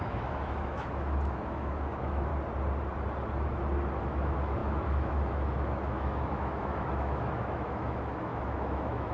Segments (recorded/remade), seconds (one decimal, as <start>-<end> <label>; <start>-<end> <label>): 0.0-2.3 remade; 2.3-4.0 recorded; 4.0-9.1 remade